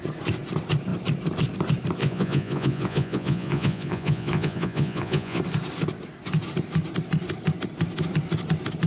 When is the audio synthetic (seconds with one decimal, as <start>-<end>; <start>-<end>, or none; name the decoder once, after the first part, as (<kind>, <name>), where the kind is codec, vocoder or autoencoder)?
2.0-5.4 (vocoder, Vocos)